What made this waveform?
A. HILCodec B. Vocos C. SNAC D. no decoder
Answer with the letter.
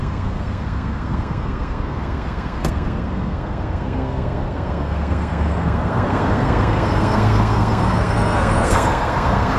C